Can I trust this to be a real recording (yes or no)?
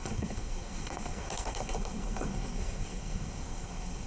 no